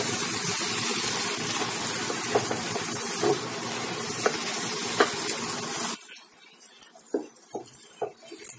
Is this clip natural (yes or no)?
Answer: yes